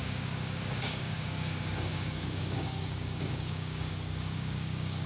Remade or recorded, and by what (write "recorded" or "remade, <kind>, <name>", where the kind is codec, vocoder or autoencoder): remade, codec, DAC